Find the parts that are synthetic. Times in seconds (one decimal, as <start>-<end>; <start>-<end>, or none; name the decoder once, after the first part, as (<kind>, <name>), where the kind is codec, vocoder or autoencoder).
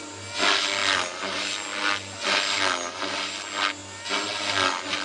none